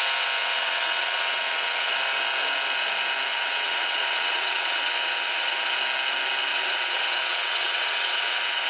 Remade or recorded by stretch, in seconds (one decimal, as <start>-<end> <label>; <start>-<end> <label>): 0.0-0.4 recorded; 0.4-1.9 remade; 1.9-3.3 recorded; 3.3-5.7 remade; 5.7-6.5 recorded; 6.5-8.7 remade